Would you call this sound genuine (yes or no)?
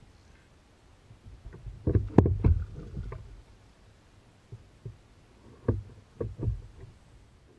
yes